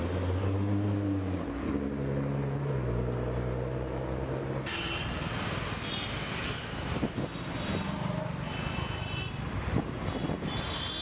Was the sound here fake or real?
real